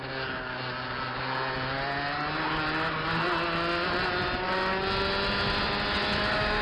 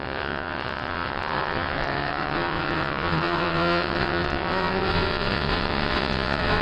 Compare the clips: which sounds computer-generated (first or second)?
second